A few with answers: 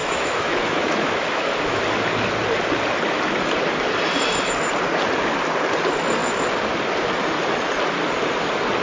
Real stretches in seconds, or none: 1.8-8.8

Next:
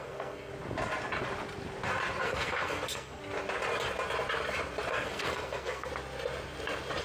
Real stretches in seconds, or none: 0.5-2.2; 3.2-4.9; 5.9-7.0

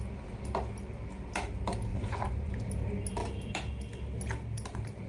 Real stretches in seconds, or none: 0.0-1.9; 2.5-5.1